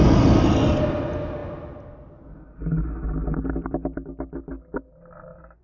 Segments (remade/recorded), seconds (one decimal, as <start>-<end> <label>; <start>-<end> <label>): 0.0-5.6 recorded